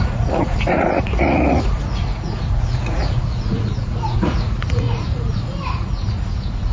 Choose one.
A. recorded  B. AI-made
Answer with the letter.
B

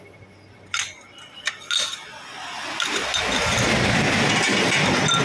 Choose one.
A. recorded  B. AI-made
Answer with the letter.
A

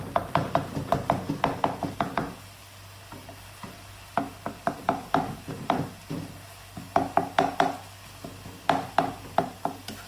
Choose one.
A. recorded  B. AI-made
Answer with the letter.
A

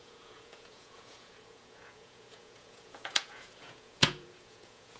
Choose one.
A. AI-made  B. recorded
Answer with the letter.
A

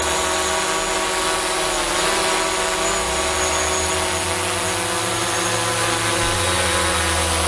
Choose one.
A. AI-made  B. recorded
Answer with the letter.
B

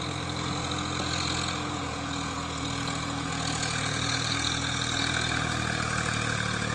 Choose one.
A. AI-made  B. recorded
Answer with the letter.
A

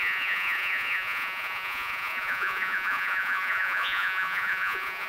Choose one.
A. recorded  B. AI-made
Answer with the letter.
B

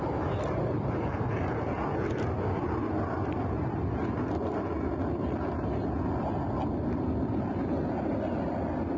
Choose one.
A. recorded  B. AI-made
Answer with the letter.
A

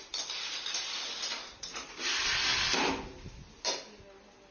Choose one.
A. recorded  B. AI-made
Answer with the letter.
A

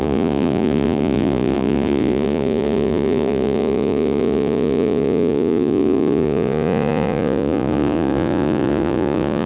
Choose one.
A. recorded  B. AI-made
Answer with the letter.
B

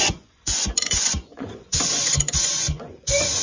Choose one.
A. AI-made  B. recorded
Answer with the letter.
A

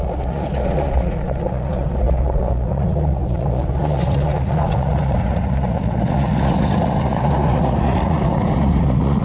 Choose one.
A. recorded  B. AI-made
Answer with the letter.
B